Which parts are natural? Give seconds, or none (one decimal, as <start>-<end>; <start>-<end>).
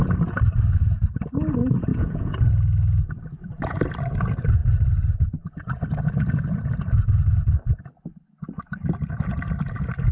0.0-1.9; 2.5-10.1